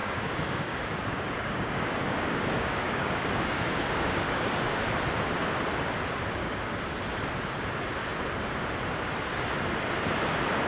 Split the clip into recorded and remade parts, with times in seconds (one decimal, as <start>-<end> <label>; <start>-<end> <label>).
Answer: 0.0-4.8 remade; 4.8-6.4 recorded; 6.4-6.9 remade; 6.9-10.7 recorded